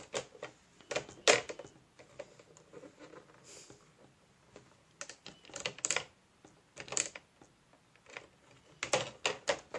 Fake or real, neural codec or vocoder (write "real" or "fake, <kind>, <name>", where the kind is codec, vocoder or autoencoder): real